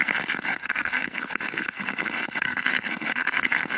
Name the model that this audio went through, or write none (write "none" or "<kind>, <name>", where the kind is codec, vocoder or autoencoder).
codec, SNAC